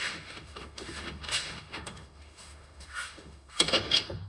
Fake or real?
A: fake